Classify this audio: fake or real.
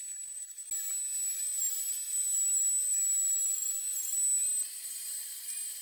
real